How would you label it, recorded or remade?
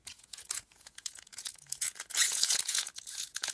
remade